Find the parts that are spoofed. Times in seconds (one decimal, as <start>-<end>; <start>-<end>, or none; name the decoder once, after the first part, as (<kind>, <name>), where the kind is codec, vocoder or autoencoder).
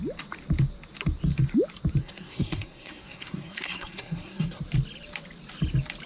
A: 2.0-4.6 (codec, SNAC)